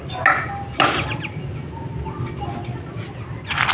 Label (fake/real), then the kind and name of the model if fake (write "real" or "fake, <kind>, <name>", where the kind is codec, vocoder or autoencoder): real